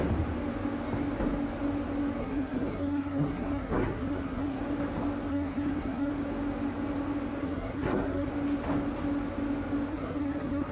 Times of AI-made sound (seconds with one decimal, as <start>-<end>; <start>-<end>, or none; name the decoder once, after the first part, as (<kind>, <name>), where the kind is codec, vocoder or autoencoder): 2.2-4.6 (codec, SNAC); 5.3-6.1; 7.4-8.3; 9.9-10.7